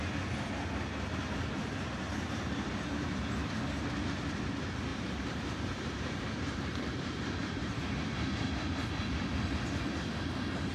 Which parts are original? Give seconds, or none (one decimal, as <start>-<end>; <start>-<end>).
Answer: 0.0-1.6; 2.7-4.9; 7.9-10.7